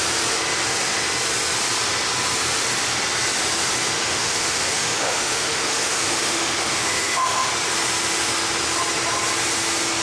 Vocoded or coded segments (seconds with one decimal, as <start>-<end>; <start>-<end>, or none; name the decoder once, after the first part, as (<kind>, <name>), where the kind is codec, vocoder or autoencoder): 4.1-7.5 (autoencoder, DAC-VAE)